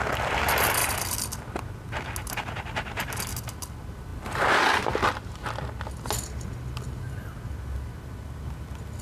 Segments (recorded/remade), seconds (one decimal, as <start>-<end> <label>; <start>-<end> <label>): 0.0-9.0 recorded